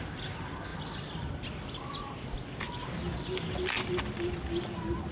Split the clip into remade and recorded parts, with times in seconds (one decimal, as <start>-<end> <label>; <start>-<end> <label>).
0.0-5.1 recorded